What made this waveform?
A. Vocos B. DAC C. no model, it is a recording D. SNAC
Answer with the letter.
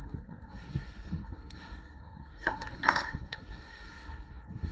D